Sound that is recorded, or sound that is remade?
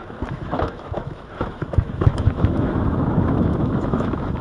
remade